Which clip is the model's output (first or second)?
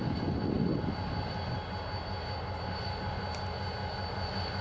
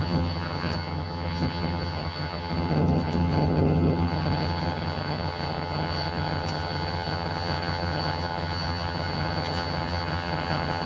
second